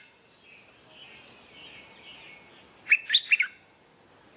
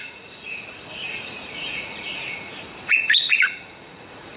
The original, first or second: first